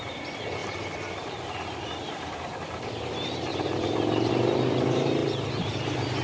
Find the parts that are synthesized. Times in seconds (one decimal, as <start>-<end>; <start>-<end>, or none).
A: 0.6-4.3